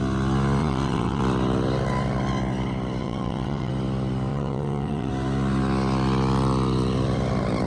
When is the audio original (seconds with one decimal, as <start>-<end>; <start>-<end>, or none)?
0.0-0.6; 1.2-3.0; 3.7-4.3; 5.1-7.7